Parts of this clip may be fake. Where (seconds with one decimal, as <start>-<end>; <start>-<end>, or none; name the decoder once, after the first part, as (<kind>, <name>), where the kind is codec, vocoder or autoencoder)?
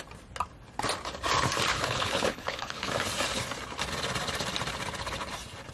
1.7-2.9 (codec, HILCodec)